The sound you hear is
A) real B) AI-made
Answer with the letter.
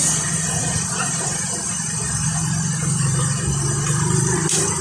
A